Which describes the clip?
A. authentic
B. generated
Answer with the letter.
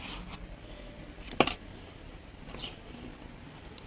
A